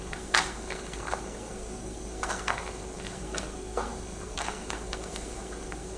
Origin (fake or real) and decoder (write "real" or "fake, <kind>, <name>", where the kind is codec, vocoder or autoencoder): fake, codec, SNAC